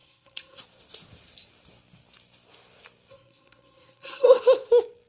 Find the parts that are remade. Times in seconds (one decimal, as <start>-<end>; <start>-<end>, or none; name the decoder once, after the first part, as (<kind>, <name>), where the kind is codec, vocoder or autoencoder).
0.0-0.6 (codec, SNAC); 3.1-4.4